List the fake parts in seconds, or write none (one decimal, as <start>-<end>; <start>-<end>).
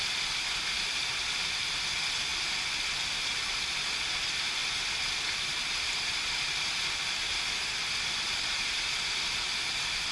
none